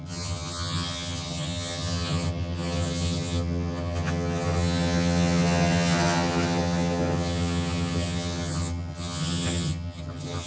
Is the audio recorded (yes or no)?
no